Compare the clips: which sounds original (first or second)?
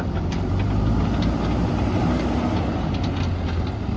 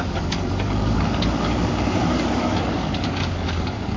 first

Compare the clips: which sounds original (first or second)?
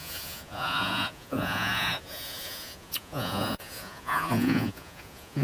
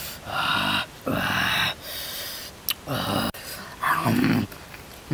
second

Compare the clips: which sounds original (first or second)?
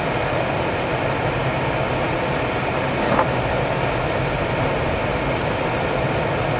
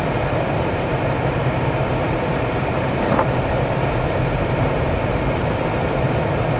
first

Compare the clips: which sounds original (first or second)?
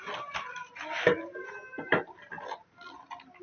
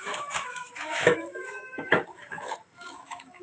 first